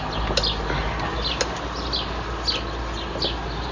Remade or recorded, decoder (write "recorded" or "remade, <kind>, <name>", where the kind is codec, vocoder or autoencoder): recorded